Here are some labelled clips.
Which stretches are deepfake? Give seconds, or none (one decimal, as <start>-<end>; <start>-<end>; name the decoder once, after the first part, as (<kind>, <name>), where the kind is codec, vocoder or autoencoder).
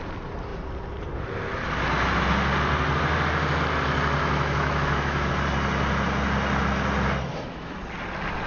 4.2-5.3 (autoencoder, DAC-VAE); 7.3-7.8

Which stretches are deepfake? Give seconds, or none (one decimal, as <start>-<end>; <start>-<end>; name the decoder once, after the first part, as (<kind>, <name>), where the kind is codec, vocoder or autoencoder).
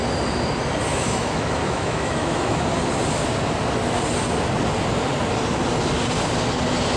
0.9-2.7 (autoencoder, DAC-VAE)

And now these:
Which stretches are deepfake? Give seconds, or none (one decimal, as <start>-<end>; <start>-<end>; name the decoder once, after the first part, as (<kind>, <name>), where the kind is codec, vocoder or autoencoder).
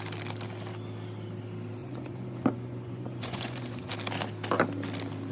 1.8-3.9 (vocoder, Vocos)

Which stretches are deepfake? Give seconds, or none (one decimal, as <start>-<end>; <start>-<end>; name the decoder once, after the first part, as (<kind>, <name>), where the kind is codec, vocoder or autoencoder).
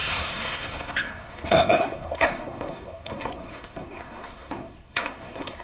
0.0-5.6 (codec, SNAC)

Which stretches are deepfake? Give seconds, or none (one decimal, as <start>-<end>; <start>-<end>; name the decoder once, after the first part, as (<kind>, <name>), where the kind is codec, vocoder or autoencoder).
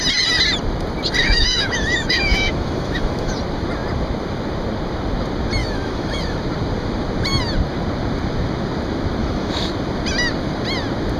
1.2-3.3 (autoencoder, DAC-VAE); 5.6-6.4; 9.2-9.7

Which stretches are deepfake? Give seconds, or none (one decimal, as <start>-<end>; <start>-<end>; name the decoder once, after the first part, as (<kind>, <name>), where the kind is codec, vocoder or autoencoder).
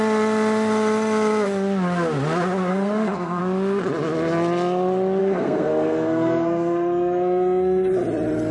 2.7-3.4 (codec, SNAC); 5.2-7.9